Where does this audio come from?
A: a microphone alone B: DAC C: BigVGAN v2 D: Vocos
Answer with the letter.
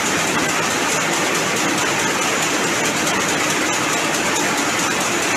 A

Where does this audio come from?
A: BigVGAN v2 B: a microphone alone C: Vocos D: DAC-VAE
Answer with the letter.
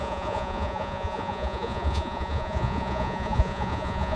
C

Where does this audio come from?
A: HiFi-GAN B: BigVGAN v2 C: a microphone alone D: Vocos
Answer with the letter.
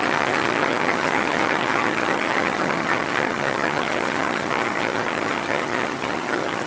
A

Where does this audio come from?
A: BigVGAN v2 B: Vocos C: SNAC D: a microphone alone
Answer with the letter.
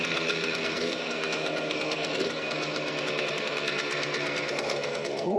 C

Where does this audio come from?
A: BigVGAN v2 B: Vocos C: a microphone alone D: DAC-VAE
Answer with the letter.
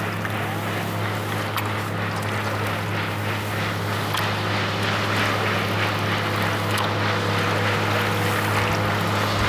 C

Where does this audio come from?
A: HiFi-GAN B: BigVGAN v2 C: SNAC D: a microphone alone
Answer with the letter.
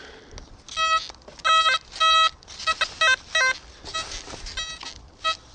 D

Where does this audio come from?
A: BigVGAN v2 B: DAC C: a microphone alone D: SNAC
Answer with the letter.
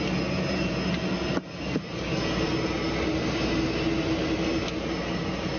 C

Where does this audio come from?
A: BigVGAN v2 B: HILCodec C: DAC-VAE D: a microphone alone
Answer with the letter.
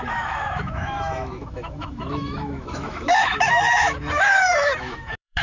C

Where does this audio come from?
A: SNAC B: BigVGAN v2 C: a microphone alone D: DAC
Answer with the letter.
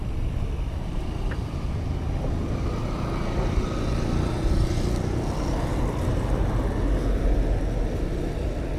C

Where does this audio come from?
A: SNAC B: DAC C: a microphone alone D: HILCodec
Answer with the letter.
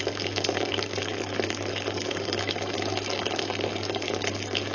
B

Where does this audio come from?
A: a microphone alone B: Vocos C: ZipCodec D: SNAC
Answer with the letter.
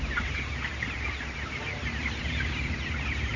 A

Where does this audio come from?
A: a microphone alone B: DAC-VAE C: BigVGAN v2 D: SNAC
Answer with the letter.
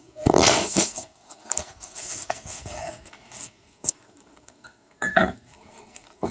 D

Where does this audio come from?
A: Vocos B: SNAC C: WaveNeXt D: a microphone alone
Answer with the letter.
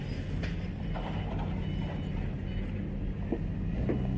D